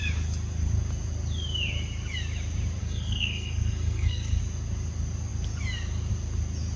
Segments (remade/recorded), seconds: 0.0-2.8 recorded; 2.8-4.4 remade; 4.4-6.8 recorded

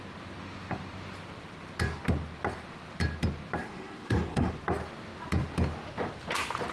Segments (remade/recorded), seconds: 0.0-3.6 recorded; 3.6-4.5 remade; 4.5-6.7 recorded

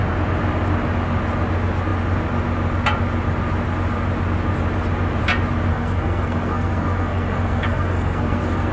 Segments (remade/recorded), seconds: 0.0-5.7 recorded; 5.7-8.7 remade

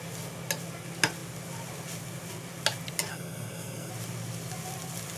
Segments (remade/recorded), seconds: 0.0-3.1 recorded; 3.1-3.9 remade; 3.9-5.2 recorded

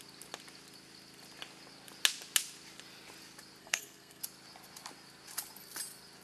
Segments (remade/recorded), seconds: 0.0-3.6 recorded; 3.6-4.2 remade; 4.2-6.2 recorded

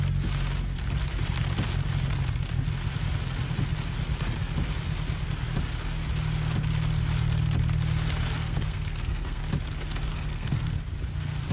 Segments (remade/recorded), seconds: 0.0-8.4 recorded; 8.4-9.4 remade; 9.4-10.1 recorded; 10.1-10.7 remade; 10.7-11.5 recorded

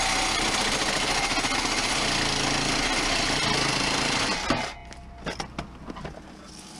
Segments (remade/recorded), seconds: 0.0-6.8 recorded

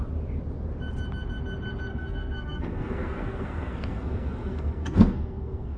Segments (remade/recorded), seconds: 0.0-1.9 recorded; 1.9-5.8 remade